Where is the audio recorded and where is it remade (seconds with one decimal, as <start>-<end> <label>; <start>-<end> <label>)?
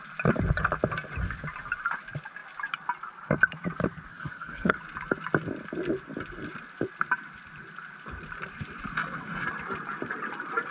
0.0-4.1 recorded; 4.1-4.8 remade; 4.8-10.7 recorded